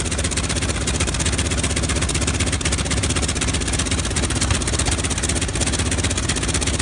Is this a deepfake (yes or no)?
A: no